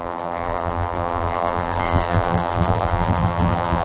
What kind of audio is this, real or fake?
fake